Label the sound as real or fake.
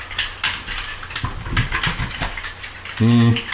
real